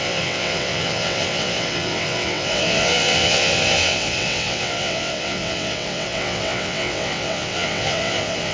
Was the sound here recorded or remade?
remade